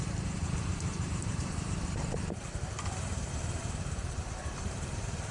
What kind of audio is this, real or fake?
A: fake